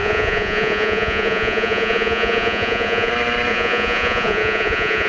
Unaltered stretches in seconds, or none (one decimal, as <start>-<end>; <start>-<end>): 3.1-3.5